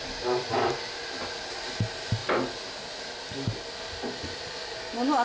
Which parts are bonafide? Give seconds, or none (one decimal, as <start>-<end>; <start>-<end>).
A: 0.0-5.2